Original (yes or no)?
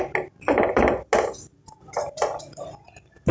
yes